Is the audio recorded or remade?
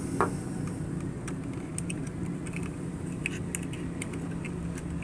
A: recorded